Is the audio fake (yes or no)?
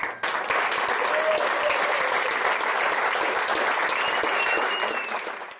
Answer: no